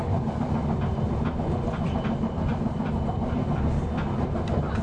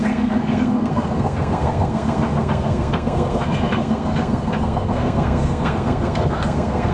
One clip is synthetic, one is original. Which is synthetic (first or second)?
second